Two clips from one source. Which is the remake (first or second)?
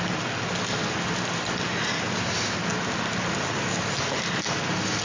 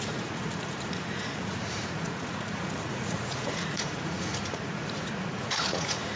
second